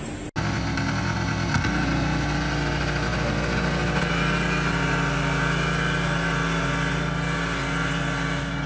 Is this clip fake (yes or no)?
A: no